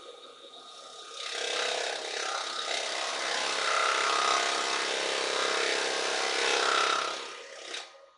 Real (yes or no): yes